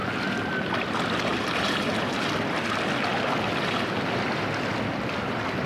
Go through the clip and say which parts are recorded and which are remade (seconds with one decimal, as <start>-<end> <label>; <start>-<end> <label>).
0.0-1.3 recorded; 1.3-1.9 remade; 1.9-5.7 recorded